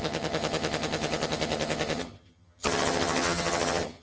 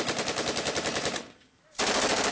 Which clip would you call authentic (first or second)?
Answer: second